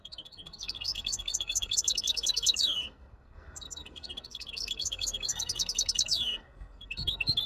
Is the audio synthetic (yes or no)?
yes